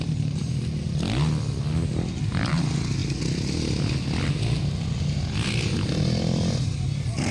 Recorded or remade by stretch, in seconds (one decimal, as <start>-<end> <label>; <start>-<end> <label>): 0.0-0.4 remade; 0.4-2.5 recorded; 2.5-3.0 remade; 3.0-6.5 recorded; 6.5-7.3 remade